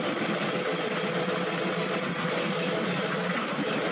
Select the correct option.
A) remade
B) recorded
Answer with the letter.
B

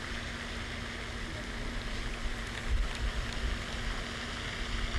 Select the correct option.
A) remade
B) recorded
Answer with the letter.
B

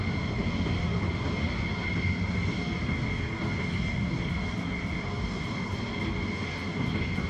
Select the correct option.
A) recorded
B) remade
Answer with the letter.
A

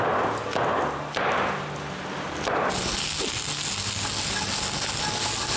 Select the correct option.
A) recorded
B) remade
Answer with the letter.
A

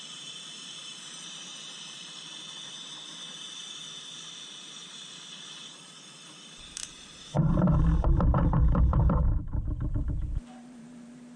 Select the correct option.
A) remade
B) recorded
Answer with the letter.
A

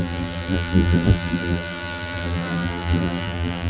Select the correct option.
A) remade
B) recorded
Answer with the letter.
A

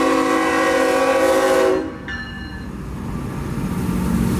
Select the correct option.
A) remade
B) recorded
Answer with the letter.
B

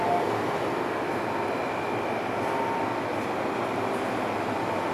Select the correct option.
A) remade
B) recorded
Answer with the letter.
B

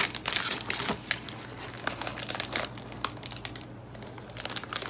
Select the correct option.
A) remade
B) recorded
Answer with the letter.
B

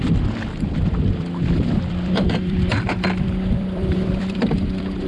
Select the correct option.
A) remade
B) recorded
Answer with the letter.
A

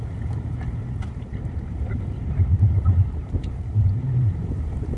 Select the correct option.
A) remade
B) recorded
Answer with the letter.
A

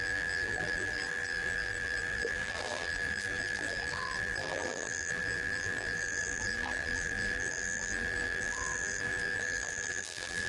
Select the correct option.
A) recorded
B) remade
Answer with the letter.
B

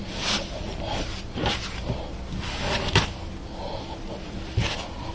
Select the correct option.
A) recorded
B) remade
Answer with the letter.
A